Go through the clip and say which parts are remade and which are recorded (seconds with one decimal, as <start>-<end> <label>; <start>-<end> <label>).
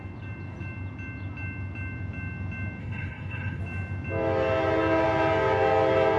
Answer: 0.0-2.8 recorded; 2.8-3.6 remade; 3.6-6.2 recorded